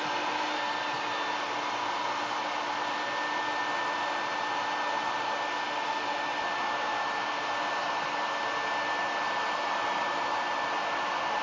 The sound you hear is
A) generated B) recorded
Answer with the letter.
B